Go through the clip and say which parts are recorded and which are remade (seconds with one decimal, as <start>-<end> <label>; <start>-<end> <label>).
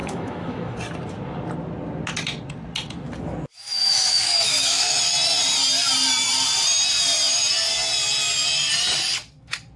0.0-0.8 remade; 0.8-3.5 recorded; 3.5-5.0 remade; 5.0-9.8 recorded